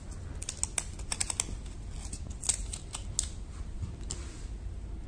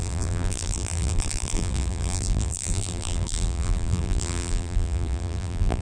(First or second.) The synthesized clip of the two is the second